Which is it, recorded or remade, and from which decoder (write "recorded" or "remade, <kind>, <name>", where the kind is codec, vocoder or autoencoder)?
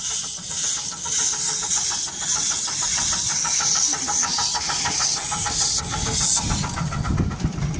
recorded